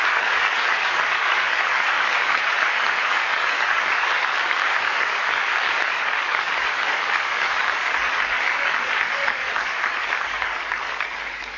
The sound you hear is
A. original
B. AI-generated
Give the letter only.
B